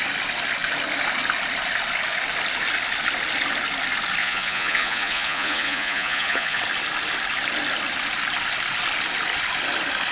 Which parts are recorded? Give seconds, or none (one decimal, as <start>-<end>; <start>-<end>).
0.0-4.2; 6.6-10.1

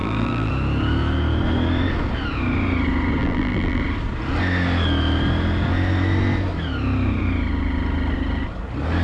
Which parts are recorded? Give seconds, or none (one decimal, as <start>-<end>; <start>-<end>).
0.5-3.2; 3.8-9.0

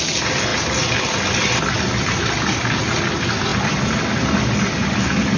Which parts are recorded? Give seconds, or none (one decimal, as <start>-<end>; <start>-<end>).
0.0-5.4

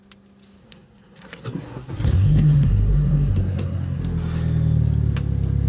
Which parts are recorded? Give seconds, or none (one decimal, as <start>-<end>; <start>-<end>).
0.0-0.6; 4.0-5.7

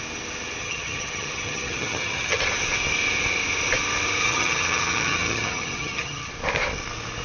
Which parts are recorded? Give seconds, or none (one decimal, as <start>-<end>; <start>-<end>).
0.0-0.6; 2.4-4.2; 6.3-7.2

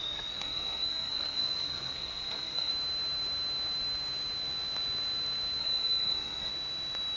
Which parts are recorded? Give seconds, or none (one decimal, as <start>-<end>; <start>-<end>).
2.7-5.6; 6.5-7.2